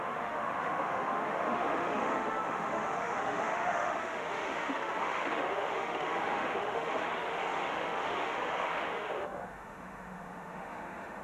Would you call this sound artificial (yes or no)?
yes